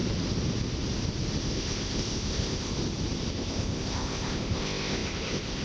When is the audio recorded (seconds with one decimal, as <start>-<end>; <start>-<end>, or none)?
0.0-1.4; 2.7-3.3